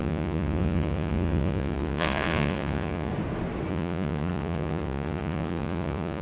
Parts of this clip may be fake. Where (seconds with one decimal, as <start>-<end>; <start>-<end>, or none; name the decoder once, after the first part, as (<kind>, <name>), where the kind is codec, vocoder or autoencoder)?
0.0-3.1 (vocoder, Vocos); 3.7-6.2